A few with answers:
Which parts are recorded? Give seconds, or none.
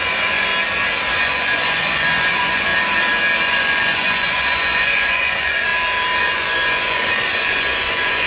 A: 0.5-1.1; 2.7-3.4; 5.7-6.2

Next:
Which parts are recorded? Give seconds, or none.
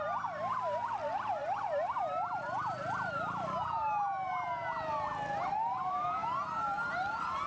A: 0.0-7.5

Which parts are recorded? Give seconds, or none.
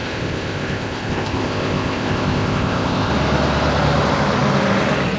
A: 3.1-5.2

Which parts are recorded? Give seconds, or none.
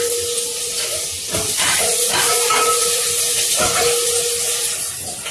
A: 0.0-5.3